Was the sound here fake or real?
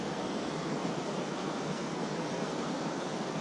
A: fake